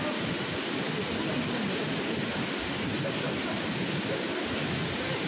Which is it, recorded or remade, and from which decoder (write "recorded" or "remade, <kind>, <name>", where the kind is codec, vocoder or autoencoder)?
recorded